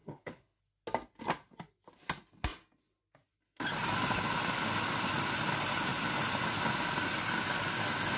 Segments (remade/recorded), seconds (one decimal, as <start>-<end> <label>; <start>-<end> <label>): 0.0-0.6 remade; 0.6-8.2 recorded